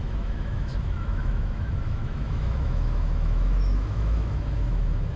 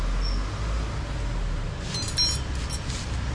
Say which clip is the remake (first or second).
first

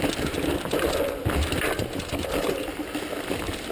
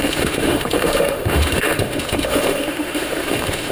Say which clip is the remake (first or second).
second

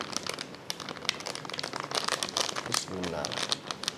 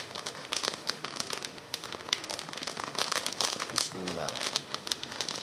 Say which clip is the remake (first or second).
second